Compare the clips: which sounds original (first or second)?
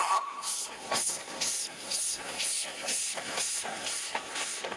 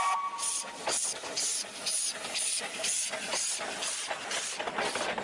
second